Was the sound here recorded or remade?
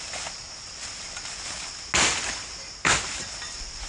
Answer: recorded